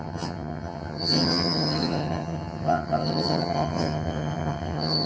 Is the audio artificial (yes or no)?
yes